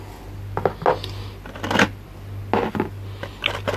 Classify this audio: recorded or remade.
recorded